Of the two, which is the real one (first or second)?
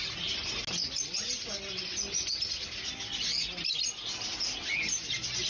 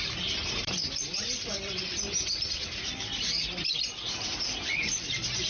first